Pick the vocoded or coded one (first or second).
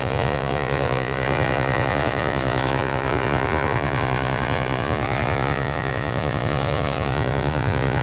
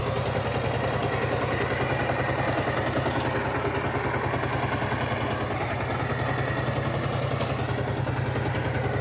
first